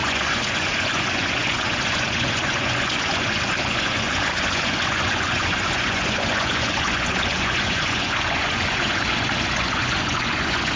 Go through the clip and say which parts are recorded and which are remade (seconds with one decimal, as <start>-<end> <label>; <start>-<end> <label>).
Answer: 0.0-10.8 remade